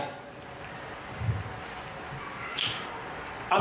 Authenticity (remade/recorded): remade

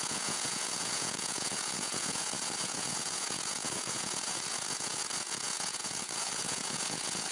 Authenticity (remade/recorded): remade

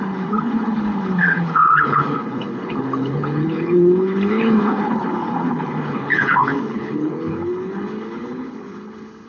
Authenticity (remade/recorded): remade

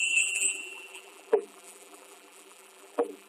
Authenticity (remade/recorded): remade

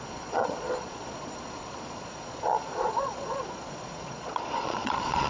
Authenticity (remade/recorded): remade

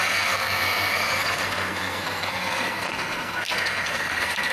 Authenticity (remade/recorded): remade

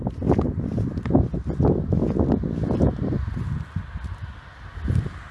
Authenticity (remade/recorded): recorded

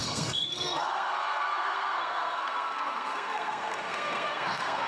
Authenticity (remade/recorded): remade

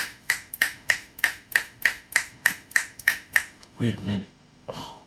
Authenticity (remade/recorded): remade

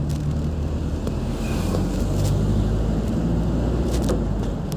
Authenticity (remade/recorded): recorded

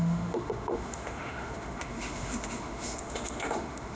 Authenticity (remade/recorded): remade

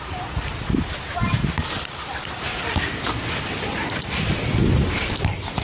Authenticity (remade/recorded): recorded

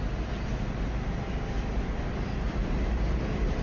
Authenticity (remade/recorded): recorded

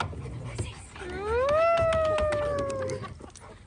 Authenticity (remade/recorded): recorded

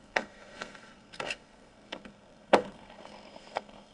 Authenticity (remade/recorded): remade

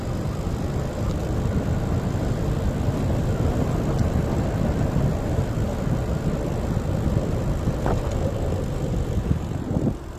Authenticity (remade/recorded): recorded